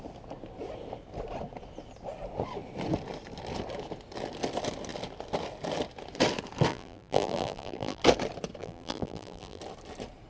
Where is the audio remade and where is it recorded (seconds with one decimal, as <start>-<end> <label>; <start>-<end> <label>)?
0.0-6.7 recorded; 6.7-8.0 remade; 8.0-8.6 recorded; 8.6-9.6 remade; 9.6-10.3 recorded